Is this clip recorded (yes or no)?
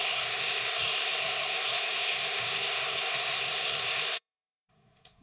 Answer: no